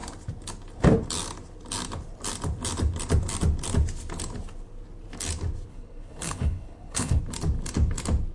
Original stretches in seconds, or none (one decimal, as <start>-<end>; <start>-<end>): 0.0-5.7; 7.2-8.3